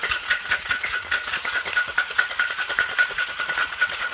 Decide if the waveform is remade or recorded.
remade